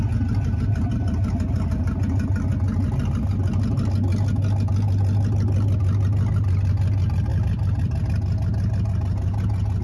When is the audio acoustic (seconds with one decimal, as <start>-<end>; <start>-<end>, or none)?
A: 0.0-7.3; 8.0-9.8